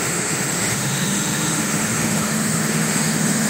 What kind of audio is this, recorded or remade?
remade